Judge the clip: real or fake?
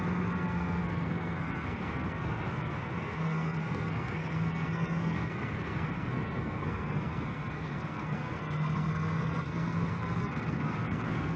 fake